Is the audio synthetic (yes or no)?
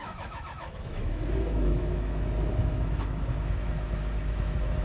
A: yes